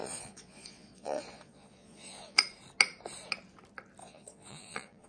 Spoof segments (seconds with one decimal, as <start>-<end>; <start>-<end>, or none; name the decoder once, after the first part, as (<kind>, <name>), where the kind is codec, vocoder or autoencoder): 0.0-2.4 (vocoder, Vocos); 4.0-5.1